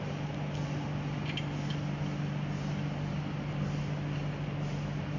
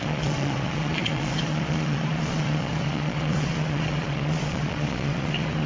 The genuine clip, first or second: first